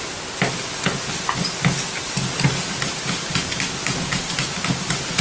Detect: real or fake real